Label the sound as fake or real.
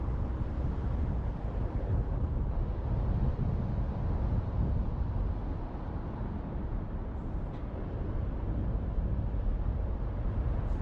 real